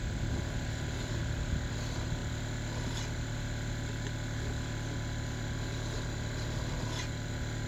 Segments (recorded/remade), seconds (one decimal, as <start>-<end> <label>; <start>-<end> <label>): 0.0-7.7 recorded